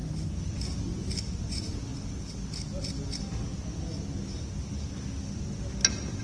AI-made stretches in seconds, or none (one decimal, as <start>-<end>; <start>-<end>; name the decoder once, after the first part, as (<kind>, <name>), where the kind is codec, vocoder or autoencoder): none